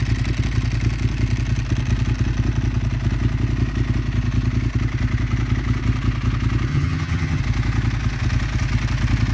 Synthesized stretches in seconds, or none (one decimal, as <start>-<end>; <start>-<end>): 6.7-7.4